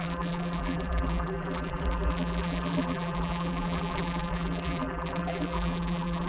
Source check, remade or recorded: remade